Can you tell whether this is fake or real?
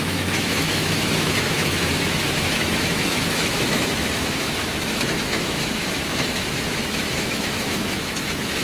fake